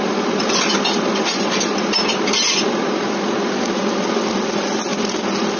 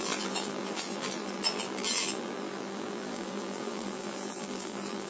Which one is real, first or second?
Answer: first